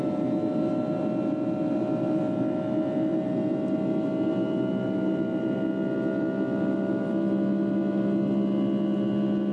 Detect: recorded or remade recorded